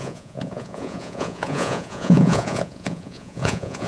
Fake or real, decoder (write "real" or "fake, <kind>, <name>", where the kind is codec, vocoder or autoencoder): fake, vocoder, Vocos